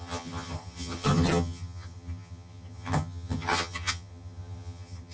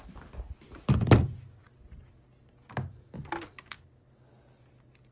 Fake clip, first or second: first